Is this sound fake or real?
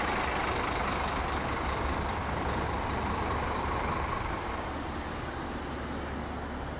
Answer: real